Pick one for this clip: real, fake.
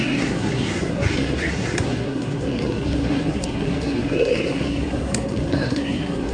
fake